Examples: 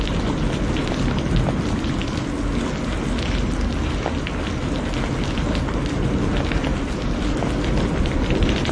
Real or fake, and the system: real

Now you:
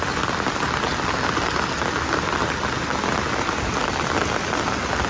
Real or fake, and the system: real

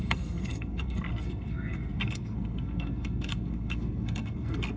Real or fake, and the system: fake, codec, SNAC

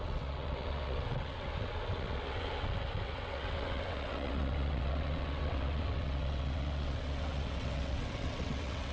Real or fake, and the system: fake, vocoder, WaveNeXt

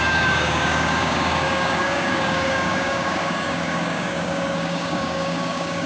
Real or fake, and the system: fake, codec, DAC